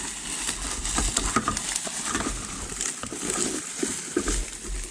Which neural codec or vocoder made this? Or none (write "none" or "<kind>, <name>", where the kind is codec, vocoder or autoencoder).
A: none